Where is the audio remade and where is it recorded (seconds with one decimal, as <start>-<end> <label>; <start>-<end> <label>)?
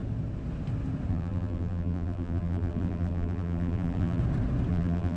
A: 0.0-1.1 recorded; 1.1-4.2 remade; 4.2-4.7 recorded; 4.7-5.2 remade